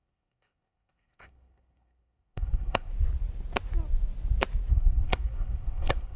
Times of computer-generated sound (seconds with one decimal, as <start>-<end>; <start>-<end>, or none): 0.0-2.9; 4.7-6.2